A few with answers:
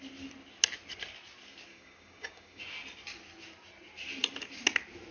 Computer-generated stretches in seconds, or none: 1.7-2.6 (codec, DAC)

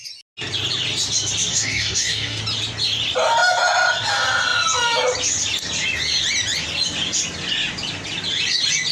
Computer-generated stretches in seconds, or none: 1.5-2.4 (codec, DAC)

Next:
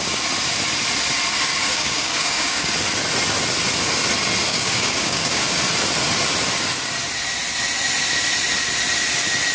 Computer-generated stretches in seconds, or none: 1.6-2.7 (codec, DAC); 4.5-5.6

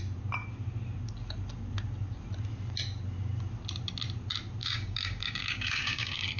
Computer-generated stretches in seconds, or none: 4.6-6.4 (codec, DAC)

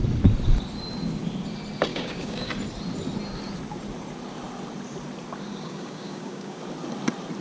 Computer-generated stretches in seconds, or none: 1.9-2.5 (codec, DAC); 5.5-6.6